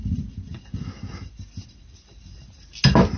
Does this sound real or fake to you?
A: real